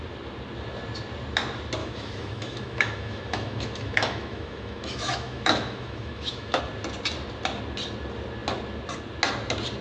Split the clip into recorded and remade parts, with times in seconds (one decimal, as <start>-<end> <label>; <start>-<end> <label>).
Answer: 0.0-1.8 recorded; 1.8-6.6 remade; 6.6-9.8 recorded